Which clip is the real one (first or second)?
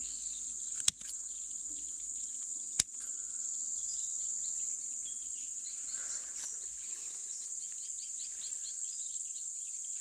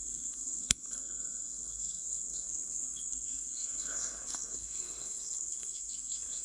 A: first